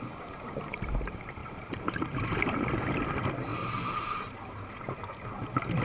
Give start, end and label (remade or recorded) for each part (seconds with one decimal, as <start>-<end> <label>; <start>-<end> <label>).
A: 0.0-1.4 recorded; 1.4-2.5 remade; 2.5-3.5 recorded; 3.5-4.8 remade; 4.8-5.8 recorded